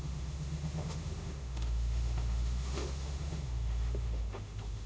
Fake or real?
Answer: fake